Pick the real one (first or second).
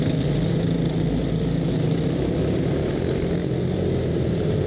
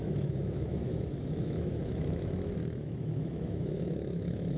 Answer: first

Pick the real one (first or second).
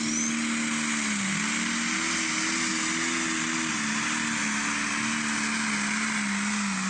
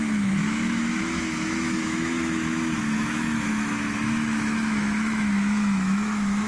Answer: first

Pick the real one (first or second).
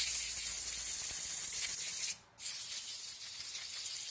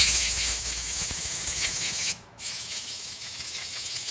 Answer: first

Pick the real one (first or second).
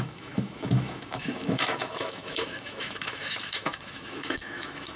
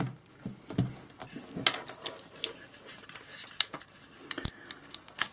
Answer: second